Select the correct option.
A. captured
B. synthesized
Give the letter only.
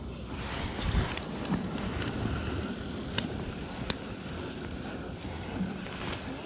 A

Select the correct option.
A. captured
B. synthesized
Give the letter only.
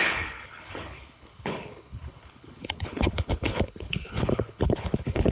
B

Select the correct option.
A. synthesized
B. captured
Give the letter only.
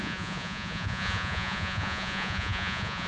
A